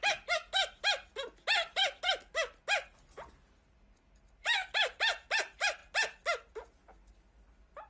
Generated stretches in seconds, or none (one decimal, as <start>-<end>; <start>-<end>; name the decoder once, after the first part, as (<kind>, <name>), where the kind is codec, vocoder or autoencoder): none